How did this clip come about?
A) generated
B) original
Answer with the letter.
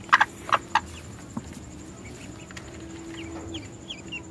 B